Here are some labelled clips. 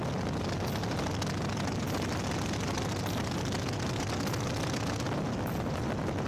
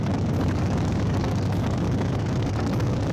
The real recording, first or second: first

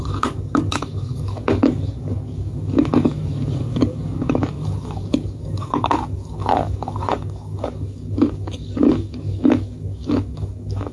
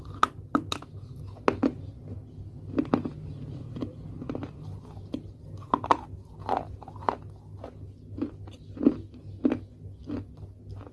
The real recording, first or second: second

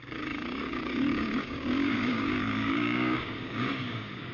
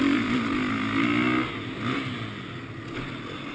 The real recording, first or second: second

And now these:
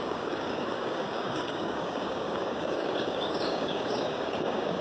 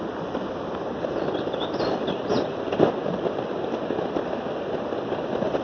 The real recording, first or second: second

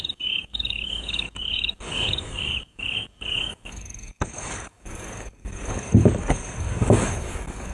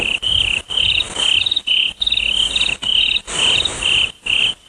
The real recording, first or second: second